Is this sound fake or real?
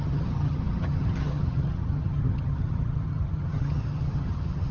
fake